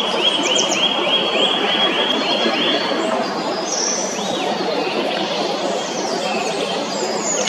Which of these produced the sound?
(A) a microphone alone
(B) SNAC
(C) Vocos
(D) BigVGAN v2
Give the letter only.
D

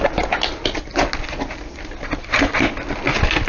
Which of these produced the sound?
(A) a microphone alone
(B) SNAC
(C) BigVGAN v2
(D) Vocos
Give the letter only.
A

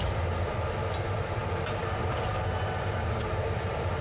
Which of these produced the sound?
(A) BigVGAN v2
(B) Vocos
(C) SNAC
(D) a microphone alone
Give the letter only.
A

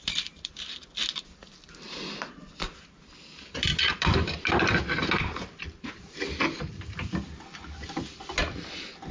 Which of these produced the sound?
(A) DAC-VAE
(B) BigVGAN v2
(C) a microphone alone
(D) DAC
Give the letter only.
B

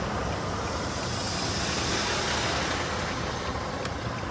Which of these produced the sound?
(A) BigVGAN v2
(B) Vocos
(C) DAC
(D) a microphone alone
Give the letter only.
D